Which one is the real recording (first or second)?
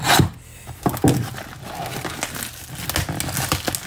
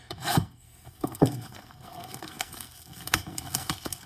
first